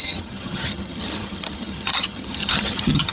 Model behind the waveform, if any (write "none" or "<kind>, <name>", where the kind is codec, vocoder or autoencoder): vocoder, HiFi-GAN